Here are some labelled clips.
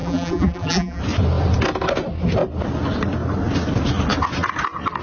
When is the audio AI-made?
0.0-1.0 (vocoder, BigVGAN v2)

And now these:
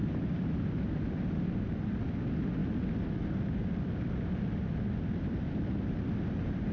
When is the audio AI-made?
0.0-1.1 (vocoder, BigVGAN v2)

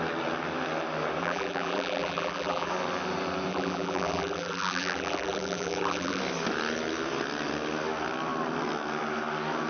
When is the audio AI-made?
1.2-2.7 (vocoder, BigVGAN v2); 3.5-6.2

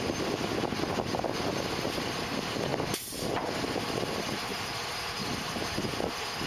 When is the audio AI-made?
4.5-5.4 (vocoder, BigVGAN v2)